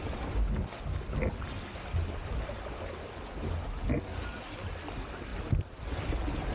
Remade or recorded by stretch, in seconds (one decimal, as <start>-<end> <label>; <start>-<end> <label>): 0.0-6.5 recorded